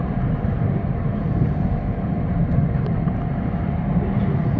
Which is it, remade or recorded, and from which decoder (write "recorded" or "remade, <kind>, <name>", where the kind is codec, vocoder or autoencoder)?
remade, vocoder, BigVGAN v2